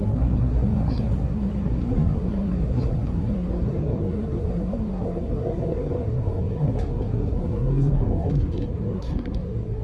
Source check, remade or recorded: remade